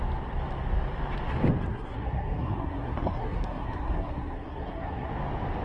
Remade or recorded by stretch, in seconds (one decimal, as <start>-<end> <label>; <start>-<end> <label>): 0.0-1.7 recorded; 1.7-5.1 remade; 5.1-5.6 recorded